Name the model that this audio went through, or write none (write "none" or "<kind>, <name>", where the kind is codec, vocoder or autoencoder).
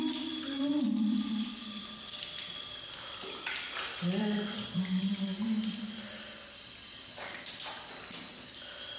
vocoder, BigVGAN v2